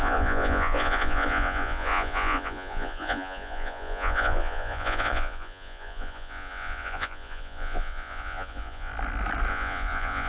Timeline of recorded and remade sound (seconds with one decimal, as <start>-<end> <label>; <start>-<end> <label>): 0.0-8.9 remade; 8.9-9.5 recorded; 9.5-10.3 remade